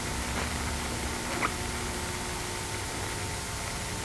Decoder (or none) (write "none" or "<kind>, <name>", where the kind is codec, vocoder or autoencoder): none